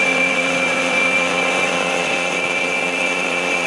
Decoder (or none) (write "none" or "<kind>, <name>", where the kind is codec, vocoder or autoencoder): vocoder, Vocos